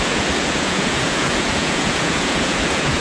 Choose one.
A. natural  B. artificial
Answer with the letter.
B